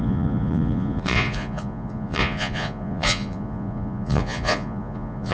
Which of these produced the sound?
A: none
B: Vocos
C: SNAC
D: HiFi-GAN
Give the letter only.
B